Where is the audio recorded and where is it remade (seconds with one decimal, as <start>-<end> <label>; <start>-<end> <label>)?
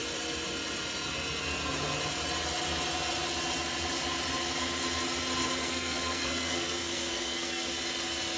0.0-5.6 recorded; 5.6-7.7 remade; 7.7-8.4 recorded